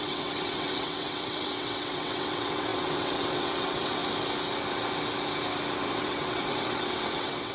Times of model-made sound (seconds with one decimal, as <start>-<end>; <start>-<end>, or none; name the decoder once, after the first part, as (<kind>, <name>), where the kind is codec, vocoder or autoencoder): 0.0-4.0 (vocoder, WaveNeXt); 5.8-7.5